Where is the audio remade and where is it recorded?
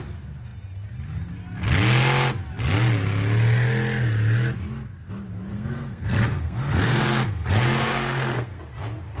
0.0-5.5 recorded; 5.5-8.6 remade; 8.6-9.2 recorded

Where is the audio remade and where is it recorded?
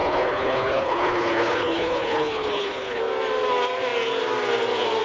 0.0-3.0 remade; 3.0-5.0 recorded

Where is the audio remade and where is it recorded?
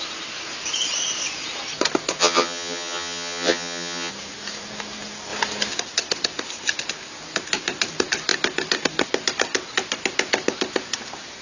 0.0-2.2 recorded; 2.2-4.1 remade; 4.1-11.4 recorded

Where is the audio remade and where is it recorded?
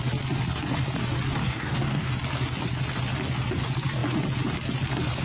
0.0-1.4 recorded; 1.4-2.1 remade; 2.1-5.2 recorded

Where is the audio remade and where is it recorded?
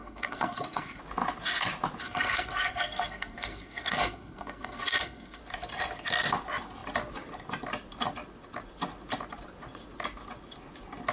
0.0-1.0 remade; 1.0-2.0 recorded; 2.0-5.4 remade; 5.4-11.1 recorded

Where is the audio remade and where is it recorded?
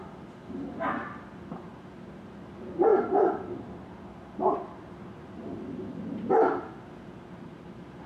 0.0-8.1 recorded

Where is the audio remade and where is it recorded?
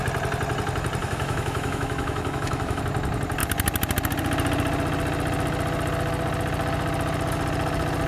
0.0-1.0 recorded; 1.0-2.8 remade; 2.8-8.1 recorded